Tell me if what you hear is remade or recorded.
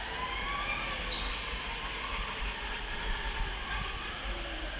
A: recorded